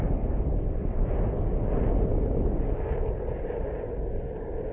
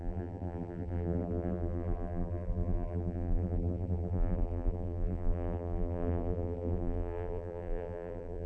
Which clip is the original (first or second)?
first